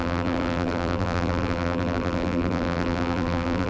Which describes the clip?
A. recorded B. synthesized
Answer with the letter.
B